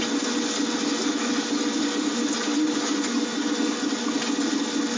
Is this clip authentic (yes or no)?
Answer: yes